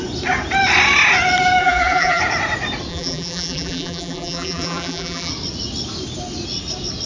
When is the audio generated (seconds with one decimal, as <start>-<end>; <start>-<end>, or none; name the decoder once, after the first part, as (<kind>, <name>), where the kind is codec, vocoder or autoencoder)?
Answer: 1.6-2.2 (vocoder, BigVGAN v2); 2.9-5.3

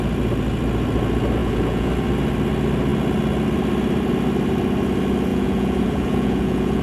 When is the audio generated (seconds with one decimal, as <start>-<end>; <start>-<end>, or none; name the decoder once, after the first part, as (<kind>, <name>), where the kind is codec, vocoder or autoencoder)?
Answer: 1.4-1.9 (vocoder, Vocos); 5.3-6.8

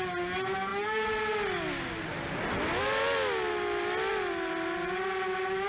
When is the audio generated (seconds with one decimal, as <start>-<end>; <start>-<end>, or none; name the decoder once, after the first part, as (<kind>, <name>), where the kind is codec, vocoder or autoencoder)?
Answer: none